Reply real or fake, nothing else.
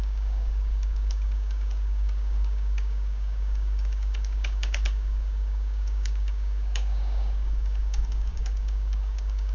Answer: fake